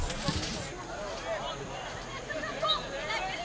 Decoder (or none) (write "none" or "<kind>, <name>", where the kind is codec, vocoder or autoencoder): none